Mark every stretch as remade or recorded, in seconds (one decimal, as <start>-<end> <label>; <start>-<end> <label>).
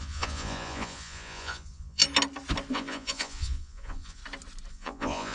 0.0-2.0 remade; 2.0-2.7 recorded; 2.7-4.2 remade; 4.2-4.7 recorded; 4.7-5.3 remade